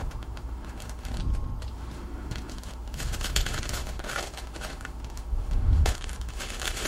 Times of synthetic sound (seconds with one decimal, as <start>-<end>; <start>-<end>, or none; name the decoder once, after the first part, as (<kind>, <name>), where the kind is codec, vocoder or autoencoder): 0.0-1.2 (autoencoder, DAC-VAE); 1.7-6.9